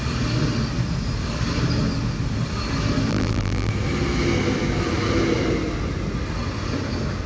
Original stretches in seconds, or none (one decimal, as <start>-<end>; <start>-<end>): 0.0-3.1; 3.7-7.3

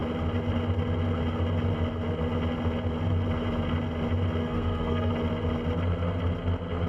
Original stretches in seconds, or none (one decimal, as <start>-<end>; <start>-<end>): 0.0-4.4; 5.1-6.9

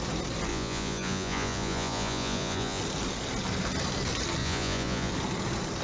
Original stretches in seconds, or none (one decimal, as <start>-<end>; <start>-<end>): 0.0-0.5; 2.8-4.4; 5.1-5.8

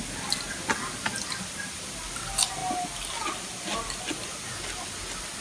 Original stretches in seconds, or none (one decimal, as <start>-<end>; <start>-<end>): 0.0-5.4

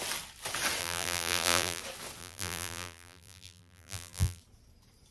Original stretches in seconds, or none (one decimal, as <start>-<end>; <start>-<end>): 0.0-0.8; 1.8-2.2; 4.4-5.1